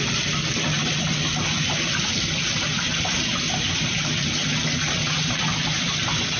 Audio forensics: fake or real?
real